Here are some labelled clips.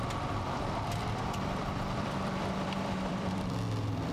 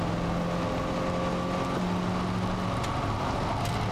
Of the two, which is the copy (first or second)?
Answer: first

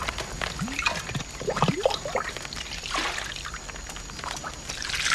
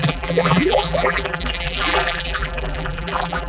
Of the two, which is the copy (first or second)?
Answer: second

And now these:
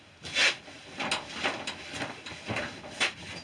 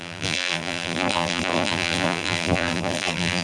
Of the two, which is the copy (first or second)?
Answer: second